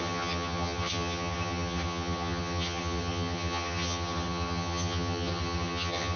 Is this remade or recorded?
remade